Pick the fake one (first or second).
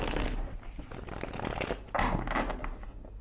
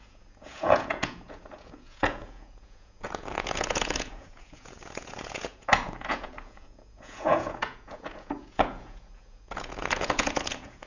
second